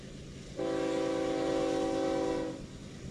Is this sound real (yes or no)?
yes